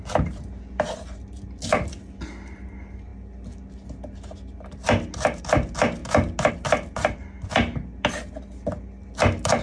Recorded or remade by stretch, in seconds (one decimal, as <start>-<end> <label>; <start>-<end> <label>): 0.0-9.6 recorded